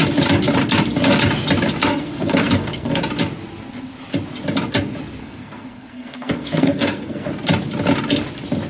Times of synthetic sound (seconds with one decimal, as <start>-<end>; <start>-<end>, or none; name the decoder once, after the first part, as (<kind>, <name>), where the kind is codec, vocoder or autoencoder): 1.9-3.0 (codec, SNAC); 5.2-7.3

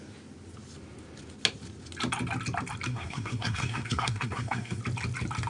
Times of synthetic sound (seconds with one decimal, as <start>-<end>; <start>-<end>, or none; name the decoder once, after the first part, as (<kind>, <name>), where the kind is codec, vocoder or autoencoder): 2.9-4.8 (codec, SNAC)

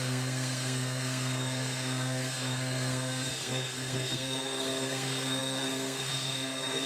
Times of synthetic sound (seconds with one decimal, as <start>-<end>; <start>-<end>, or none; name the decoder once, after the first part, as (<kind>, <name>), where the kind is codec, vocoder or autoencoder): 0.0-6.9 (codec, SNAC)